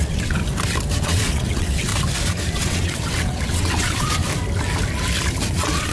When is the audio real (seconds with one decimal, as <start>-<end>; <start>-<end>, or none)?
0.4-1.0; 1.9-2.5; 4.3-5.5